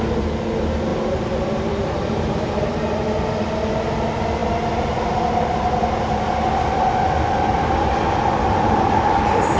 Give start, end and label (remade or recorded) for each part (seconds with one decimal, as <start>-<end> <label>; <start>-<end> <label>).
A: 0.0-0.9 recorded; 0.9-2.8 remade; 2.8-9.6 recorded